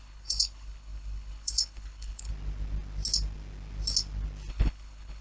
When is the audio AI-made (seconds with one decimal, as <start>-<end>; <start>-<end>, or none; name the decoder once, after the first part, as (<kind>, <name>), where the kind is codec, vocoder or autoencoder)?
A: 0.0-2.3 (codec, HILCodec); 4.5-5.2